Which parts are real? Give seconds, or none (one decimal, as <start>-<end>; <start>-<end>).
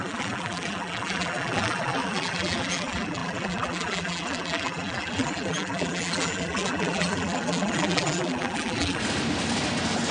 9.0-10.1